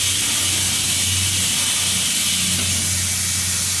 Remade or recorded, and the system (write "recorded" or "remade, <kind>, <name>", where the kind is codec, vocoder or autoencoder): recorded